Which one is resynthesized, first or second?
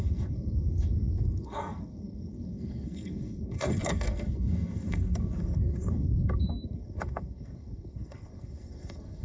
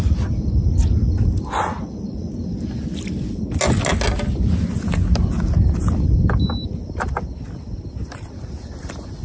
first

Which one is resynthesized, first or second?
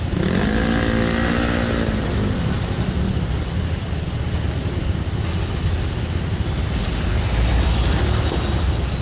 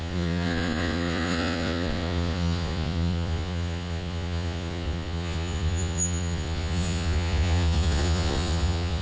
second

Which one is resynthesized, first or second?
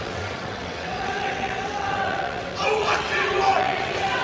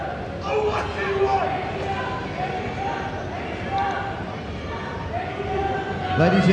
first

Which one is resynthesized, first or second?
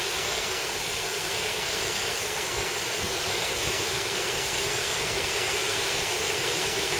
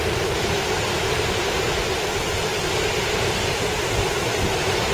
first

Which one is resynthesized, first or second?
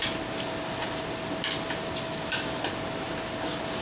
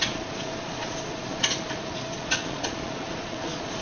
second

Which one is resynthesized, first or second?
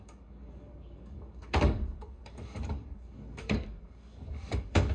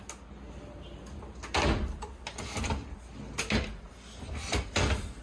first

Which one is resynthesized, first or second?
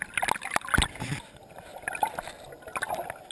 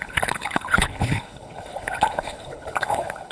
second